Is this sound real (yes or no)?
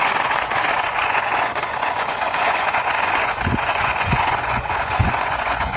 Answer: no